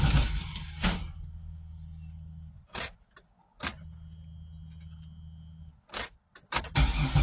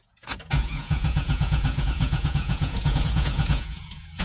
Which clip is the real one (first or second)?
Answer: first